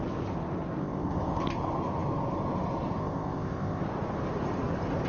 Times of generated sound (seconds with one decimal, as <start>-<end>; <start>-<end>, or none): 0.8-1.4; 3.0-3.8